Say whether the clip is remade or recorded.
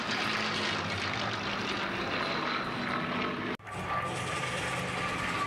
recorded